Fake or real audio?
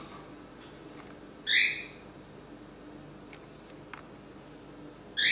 real